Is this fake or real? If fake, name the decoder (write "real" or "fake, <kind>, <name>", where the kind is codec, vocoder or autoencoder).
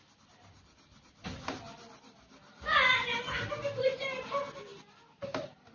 real